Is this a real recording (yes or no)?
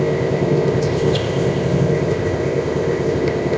no